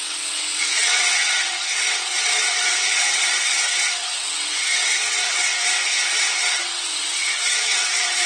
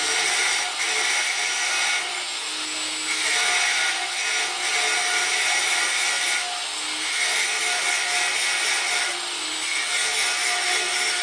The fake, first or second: first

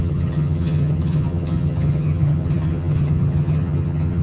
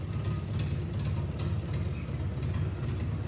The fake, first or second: first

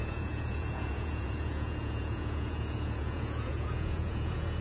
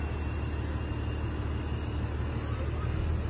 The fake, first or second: first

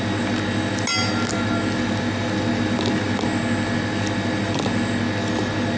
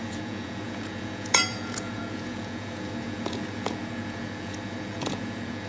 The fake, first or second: second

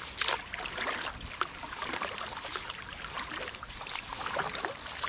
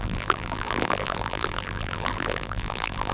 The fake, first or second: second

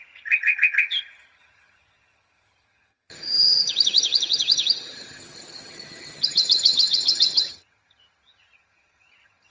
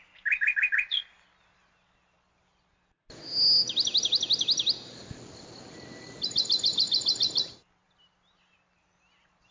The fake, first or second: first